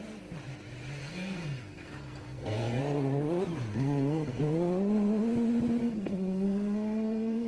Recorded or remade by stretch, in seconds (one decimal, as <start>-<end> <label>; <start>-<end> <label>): 0.0-1.0 recorded; 1.0-2.8 remade; 2.8-3.7 recorded; 3.7-4.4 remade; 4.4-5.8 recorded; 5.8-7.5 remade